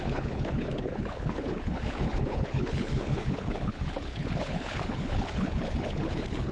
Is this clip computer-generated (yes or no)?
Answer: yes